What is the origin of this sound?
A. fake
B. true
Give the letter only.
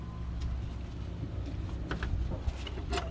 B